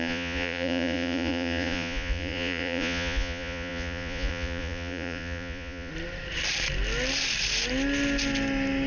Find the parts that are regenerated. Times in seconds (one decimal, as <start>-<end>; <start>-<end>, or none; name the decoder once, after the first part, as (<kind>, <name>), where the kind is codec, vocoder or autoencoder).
0.0-5.9 (vocoder, Vocos)